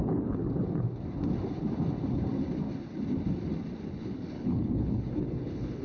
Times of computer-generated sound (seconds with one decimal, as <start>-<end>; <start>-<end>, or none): 0.0-0.4; 3.9-5.8